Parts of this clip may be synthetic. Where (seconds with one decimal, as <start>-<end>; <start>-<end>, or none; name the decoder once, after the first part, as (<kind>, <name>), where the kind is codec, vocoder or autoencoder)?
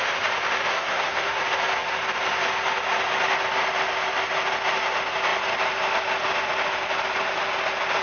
0.7-1.4 (codec, SNAC)